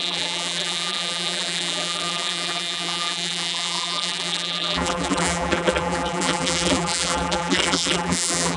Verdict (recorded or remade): remade